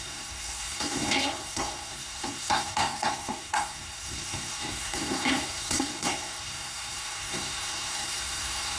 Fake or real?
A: fake